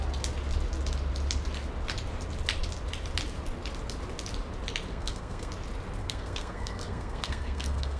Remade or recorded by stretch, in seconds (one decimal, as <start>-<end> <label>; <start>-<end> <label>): 0.0-4.9 recorded; 4.9-5.5 remade; 5.5-6.0 recorded; 6.0-8.0 remade